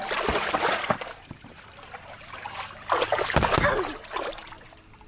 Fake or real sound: real